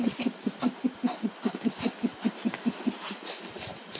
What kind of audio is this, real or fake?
real